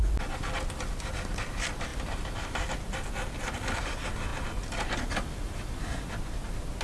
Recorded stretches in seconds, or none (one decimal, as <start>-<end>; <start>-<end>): 0.0-6.8